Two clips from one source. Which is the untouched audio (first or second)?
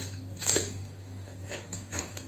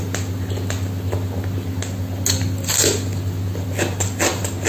second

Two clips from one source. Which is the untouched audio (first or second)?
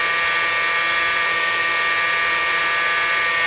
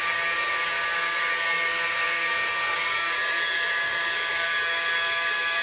first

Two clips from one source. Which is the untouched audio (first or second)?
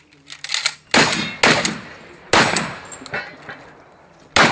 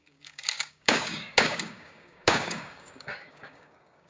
first